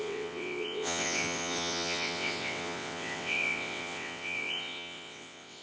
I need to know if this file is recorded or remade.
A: remade